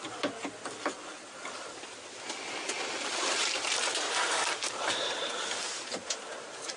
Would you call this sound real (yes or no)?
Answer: yes